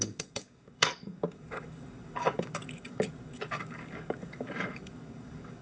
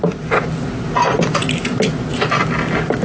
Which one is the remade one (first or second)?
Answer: first